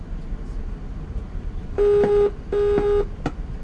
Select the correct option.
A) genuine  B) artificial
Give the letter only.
A